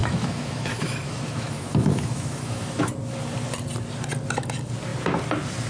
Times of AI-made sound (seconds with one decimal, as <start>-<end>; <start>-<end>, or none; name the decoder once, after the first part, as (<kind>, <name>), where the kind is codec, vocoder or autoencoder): 0.0-2.9 (autoencoder, DAC-VAE)